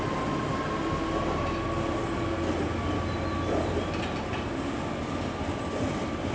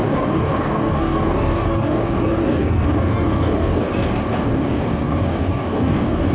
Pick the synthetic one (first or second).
second